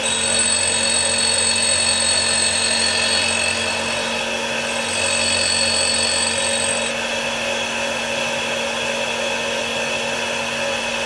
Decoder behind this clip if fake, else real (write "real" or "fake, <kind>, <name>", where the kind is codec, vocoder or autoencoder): real